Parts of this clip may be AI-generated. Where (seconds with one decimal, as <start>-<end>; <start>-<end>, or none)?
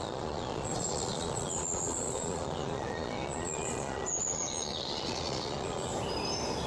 0.0-5.9